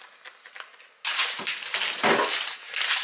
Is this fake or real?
real